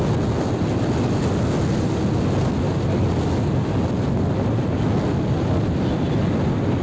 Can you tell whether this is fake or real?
real